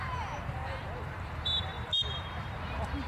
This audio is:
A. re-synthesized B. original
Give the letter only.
A